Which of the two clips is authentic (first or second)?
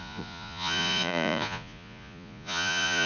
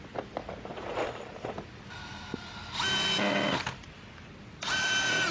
second